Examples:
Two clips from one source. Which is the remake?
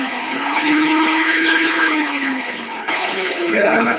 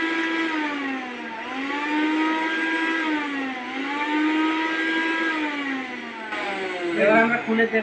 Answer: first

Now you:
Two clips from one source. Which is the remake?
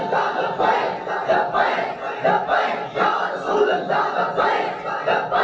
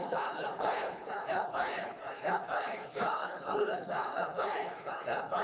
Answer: second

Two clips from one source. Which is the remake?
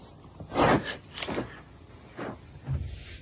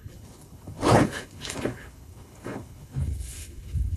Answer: second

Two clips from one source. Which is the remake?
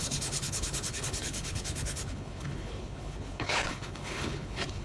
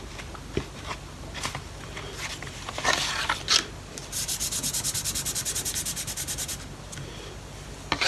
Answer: first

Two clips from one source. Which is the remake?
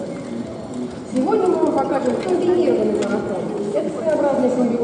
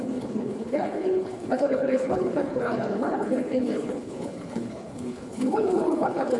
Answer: second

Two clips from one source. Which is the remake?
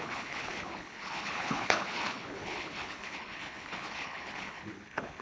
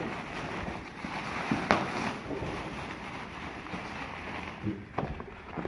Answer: first